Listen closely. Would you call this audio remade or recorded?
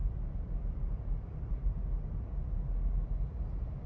recorded